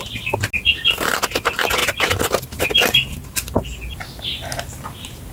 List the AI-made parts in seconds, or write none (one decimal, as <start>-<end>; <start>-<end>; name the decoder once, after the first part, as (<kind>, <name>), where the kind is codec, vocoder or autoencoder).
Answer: 1.8-2.6 (vocoder, BigVGAN v2)

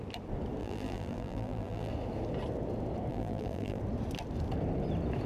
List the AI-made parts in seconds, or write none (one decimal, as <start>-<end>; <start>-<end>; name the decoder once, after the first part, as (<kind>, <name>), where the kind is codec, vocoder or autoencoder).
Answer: 0.6-1.9 (vocoder, BigVGAN v2); 3.1-3.8

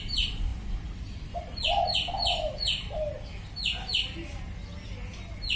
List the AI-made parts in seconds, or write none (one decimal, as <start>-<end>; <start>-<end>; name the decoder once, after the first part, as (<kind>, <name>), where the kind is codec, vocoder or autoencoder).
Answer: none

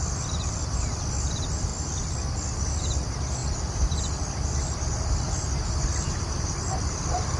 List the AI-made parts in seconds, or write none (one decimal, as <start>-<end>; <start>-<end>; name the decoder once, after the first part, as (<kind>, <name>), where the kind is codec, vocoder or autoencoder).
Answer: 0.0-1.7 (vocoder, BigVGAN v2); 2.8-7.4